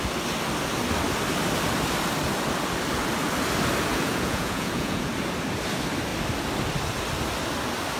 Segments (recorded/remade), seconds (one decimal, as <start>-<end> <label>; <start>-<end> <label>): 0.0-3.9 recorded; 3.9-5.1 remade; 5.1-8.0 recorded